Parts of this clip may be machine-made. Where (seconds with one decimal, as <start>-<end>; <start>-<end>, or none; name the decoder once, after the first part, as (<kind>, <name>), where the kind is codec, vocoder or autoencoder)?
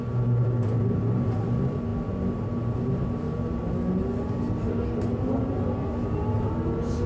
none